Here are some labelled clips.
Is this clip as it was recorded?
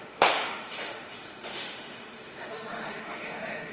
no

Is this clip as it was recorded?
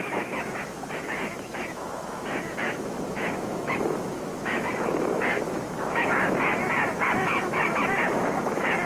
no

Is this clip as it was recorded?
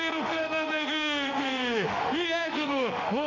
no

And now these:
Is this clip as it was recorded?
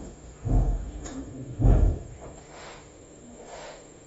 no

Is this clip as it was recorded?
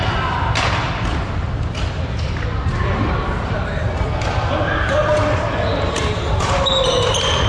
yes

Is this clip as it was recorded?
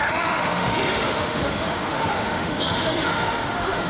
no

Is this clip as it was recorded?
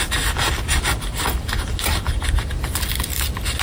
yes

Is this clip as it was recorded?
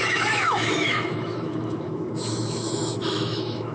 no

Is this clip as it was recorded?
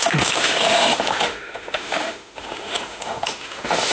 no